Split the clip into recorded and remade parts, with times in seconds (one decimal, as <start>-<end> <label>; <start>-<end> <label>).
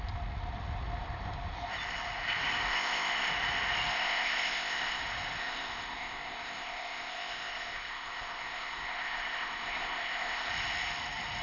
0.0-2.7 recorded; 2.7-3.3 remade; 3.3-3.9 recorded; 3.9-5.0 remade; 5.0-5.4 recorded; 5.4-10.5 remade; 10.5-11.4 recorded